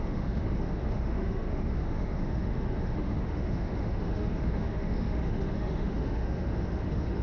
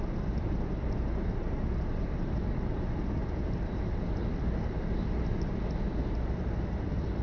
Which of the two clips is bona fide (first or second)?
second